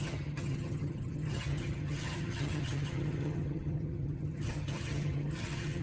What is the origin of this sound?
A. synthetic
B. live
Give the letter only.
A